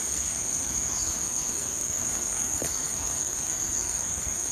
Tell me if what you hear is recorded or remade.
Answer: remade